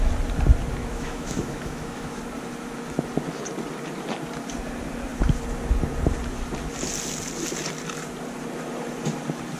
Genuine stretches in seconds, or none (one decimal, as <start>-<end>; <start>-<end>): 0.0-0.8; 2.2-9.6